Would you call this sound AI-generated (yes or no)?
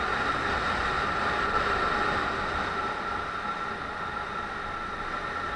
no